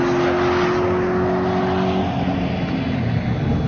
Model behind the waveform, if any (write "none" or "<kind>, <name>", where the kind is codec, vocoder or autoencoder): none